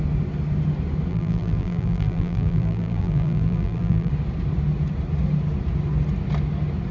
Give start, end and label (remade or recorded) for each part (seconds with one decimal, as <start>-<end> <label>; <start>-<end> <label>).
0.0-1.1 recorded; 1.1-4.1 remade; 4.1-6.9 recorded